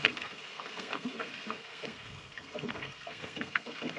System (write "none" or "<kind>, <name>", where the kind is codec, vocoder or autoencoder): codec, SNAC